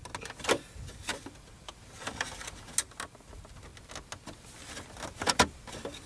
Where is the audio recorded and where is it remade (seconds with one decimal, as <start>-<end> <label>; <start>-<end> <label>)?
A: 0.0-6.1 recorded